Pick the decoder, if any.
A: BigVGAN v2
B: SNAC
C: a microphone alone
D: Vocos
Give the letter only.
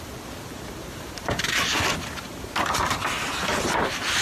C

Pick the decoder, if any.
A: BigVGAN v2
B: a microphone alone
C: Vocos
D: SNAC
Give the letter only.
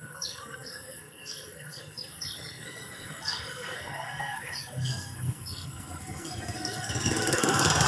D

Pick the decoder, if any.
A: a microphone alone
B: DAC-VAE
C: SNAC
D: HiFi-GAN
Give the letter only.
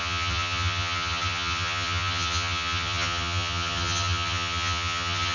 D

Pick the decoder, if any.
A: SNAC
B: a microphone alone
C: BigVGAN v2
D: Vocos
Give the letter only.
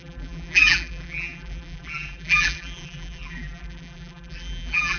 C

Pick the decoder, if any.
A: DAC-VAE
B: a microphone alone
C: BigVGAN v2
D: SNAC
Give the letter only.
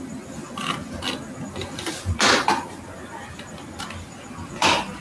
B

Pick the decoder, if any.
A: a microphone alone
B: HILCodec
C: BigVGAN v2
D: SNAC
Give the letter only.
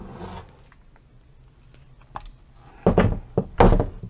A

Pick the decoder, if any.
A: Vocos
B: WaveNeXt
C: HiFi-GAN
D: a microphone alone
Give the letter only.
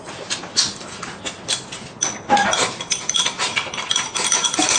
D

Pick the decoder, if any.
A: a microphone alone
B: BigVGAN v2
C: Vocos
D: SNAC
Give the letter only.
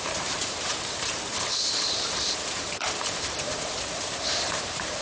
B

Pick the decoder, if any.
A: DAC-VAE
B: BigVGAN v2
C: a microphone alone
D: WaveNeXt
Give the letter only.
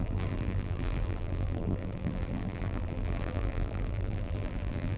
B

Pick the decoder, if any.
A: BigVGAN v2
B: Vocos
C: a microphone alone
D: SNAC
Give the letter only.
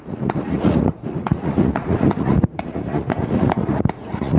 B